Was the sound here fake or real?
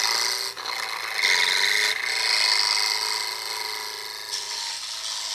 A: real